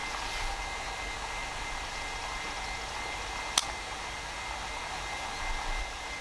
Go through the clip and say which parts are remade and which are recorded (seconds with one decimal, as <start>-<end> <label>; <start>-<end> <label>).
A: 0.0-3.6 recorded; 3.6-4.9 remade; 4.9-6.2 recorded